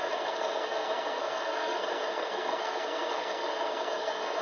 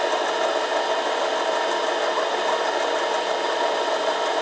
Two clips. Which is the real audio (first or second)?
second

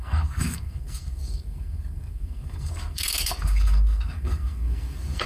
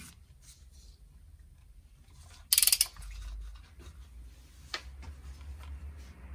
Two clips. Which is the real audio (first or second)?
second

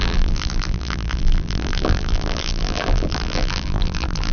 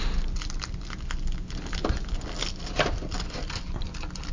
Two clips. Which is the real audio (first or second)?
second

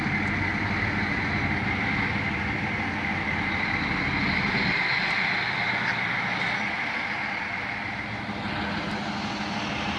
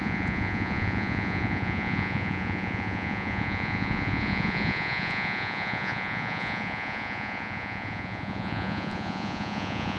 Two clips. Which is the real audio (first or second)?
first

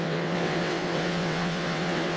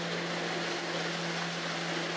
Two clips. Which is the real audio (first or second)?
second